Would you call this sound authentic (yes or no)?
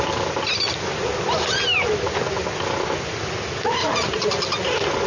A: yes